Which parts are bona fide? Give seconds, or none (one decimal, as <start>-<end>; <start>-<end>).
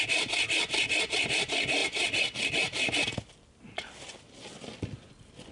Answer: 0.0-5.5